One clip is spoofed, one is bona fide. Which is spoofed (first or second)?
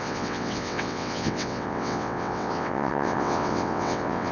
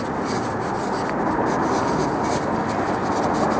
first